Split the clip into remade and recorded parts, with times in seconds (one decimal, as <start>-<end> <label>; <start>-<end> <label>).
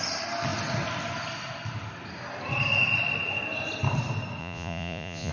0.0-4.4 recorded; 4.4-5.3 remade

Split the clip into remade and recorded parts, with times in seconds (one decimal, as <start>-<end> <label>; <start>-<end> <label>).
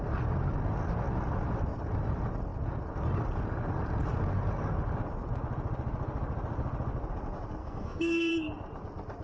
0.0-7.6 recorded; 7.6-8.3 remade; 8.3-9.2 recorded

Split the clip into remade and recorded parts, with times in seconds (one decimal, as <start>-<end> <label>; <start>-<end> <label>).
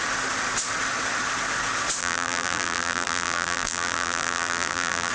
0.0-2.0 recorded; 2.0-5.1 remade